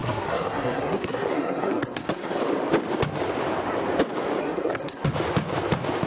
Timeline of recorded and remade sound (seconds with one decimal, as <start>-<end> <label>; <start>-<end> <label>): 0.0-2.4 remade; 2.4-4.4 recorded; 4.4-5.1 remade; 5.1-6.1 recorded